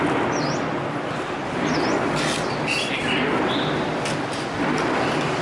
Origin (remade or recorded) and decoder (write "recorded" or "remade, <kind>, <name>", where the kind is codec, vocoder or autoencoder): recorded